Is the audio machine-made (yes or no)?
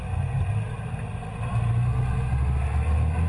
no